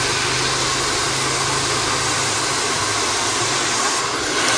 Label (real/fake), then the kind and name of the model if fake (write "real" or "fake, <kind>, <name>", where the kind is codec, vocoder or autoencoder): real